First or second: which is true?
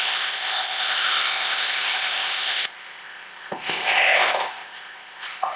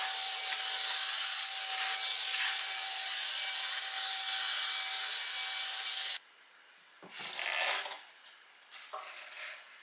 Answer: second